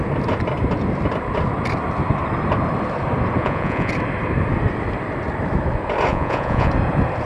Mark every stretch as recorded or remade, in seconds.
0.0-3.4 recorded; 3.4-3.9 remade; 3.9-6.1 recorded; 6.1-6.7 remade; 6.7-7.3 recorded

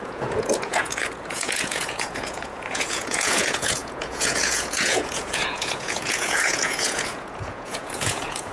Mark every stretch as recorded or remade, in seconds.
0.0-8.5 remade

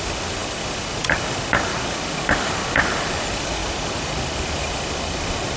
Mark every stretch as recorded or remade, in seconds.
0.0-5.6 recorded

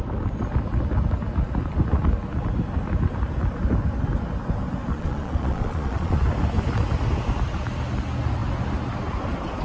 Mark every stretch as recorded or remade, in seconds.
0.0-4.9 recorded; 4.9-6.2 remade; 6.2-9.6 recorded

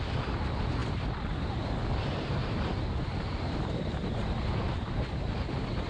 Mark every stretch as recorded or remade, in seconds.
0.0-5.9 recorded

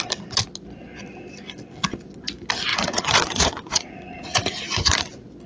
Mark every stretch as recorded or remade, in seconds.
0.0-2.7 recorded; 2.7-5.1 remade; 5.1-5.5 recorded

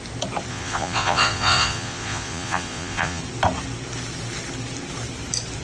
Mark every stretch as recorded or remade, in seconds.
0.0-0.5 recorded; 0.5-3.2 remade; 3.2-5.6 recorded

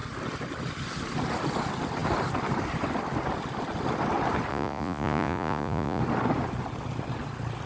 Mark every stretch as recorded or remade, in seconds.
0.0-4.5 recorded; 4.5-6.0 remade; 6.0-7.7 recorded